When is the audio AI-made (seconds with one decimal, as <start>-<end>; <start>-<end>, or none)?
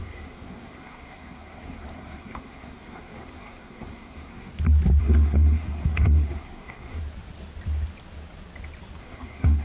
0.0-4.5; 5.0-7.0; 9.0-9.6